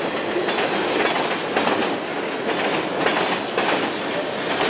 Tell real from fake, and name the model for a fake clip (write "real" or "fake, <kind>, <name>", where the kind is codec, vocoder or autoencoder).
real